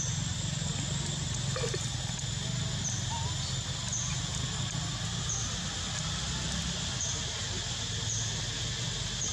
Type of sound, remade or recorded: recorded